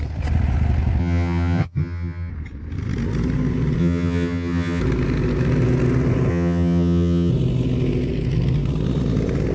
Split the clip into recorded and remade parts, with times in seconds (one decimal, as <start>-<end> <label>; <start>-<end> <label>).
0.0-1.0 recorded; 1.0-2.3 remade; 2.3-3.8 recorded; 3.8-4.8 remade; 4.8-6.3 recorded; 6.3-7.3 remade; 7.3-9.5 recorded